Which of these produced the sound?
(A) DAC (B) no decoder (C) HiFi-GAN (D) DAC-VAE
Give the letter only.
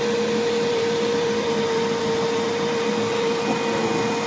B